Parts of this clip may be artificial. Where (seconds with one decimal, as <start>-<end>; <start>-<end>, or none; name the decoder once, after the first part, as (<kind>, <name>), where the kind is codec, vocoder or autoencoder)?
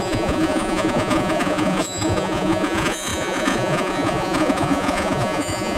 0.0-5.8 (vocoder, Vocos)